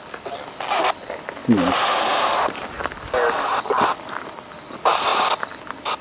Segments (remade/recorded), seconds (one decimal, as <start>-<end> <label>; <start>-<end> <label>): 0.0-1.4 recorded; 1.4-2.8 remade; 2.8-6.0 recorded